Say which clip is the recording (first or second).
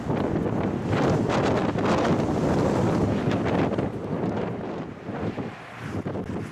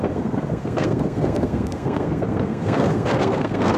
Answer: first